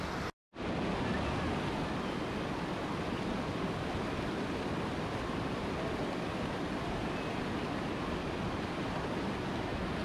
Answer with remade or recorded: recorded